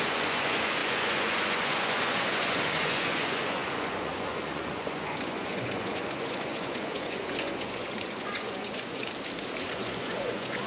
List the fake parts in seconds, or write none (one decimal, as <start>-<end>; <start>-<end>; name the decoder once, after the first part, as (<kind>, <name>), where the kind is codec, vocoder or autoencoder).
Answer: 0.0-9.0 (vocoder, Vocos); 9.6-10.7